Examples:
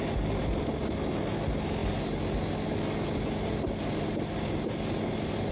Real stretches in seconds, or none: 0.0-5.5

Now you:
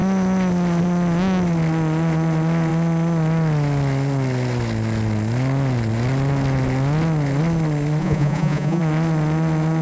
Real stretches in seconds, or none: 0.0-8.0; 8.8-9.8

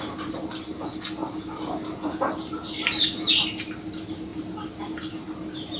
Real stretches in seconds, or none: 0.0-5.8